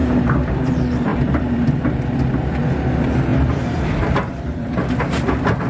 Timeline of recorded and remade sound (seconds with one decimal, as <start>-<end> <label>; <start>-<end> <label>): 0.0-0.7 remade; 0.7-1.1 recorded; 1.1-2.6 remade; 2.6-3.3 recorded; 3.3-5.0 remade; 5.0-5.7 recorded